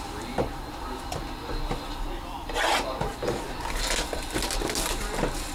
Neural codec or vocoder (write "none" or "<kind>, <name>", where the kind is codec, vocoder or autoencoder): none